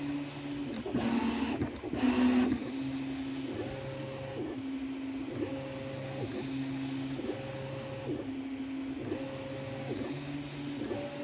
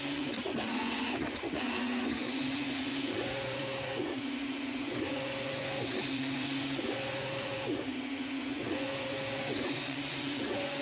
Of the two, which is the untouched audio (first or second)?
first